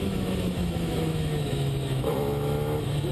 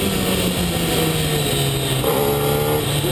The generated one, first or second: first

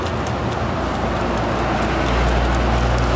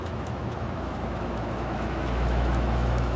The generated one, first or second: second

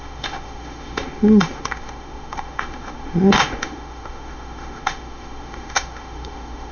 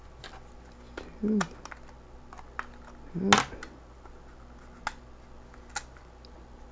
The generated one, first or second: first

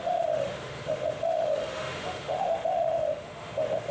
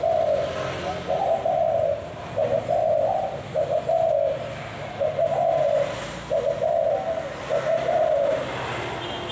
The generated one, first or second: first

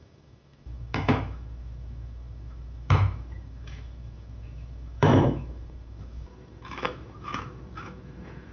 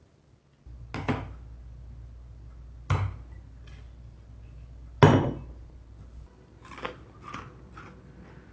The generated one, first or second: first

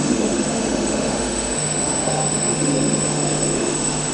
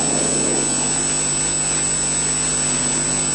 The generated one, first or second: first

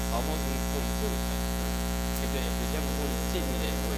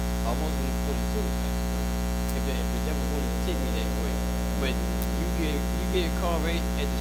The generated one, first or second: first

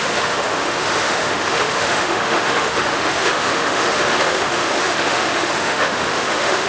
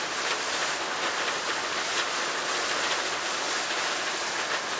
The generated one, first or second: first